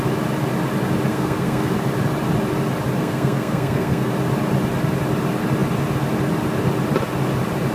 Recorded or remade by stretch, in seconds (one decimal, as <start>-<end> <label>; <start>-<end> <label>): 0.0-1.1 recorded; 1.1-1.7 remade; 1.7-3.0 recorded; 3.0-4.1 remade; 4.1-7.7 recorded